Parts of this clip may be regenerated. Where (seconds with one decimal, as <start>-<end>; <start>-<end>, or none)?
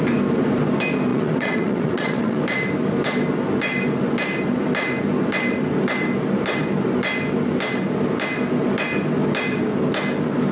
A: 1.1-2.4